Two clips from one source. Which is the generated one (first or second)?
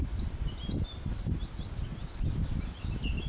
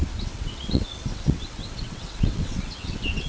second